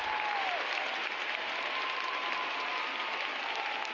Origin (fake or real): real